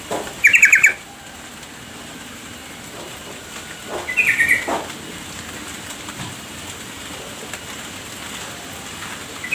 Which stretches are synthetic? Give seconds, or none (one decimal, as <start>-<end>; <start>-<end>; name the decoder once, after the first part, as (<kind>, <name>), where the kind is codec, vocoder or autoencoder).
none